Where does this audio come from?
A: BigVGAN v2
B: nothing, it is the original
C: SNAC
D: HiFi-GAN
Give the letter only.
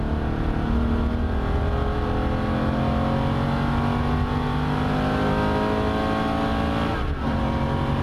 B